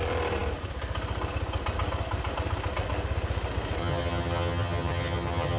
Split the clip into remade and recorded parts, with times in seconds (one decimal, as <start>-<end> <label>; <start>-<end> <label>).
0.0-3.8 recorded; 3.8-5.6 remade